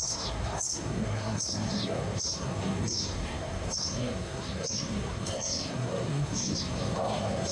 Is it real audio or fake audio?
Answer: fake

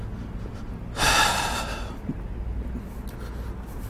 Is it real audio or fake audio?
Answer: real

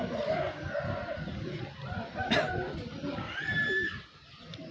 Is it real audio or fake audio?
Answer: real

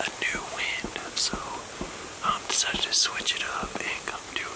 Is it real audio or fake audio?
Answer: real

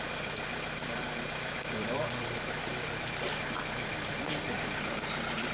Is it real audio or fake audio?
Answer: fake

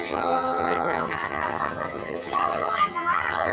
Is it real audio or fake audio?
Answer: fake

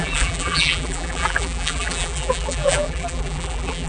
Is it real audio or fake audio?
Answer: fake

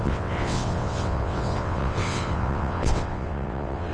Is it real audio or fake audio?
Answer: fake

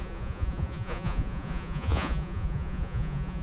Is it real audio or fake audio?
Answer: fake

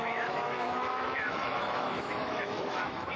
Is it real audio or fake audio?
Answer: fake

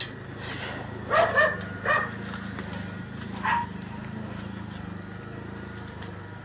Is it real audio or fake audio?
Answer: real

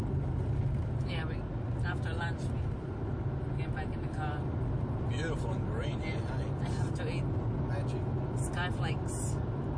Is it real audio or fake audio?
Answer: real